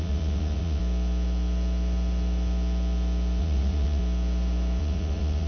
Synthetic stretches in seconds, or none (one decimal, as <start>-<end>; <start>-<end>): 0.0-0.8; 3.4-4.0; 4.8-5.5